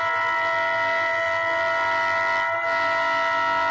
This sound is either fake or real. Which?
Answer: real